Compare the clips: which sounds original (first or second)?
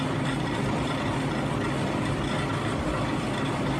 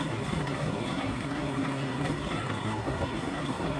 first